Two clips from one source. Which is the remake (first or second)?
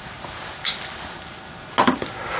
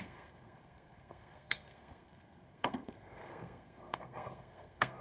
second